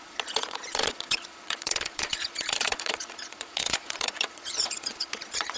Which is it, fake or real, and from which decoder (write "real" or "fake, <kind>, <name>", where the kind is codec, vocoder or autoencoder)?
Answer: fake, vocoder, Vocos